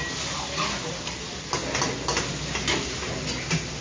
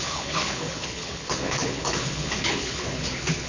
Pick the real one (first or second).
first